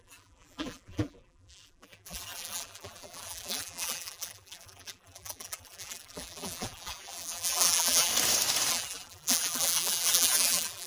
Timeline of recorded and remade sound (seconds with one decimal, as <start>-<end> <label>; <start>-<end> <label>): 0.0-8.1 remade; 8.1-8.7 recorded; 8.7-10.9 remade